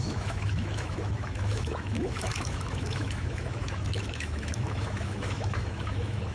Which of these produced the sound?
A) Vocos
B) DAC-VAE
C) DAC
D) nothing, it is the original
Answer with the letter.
B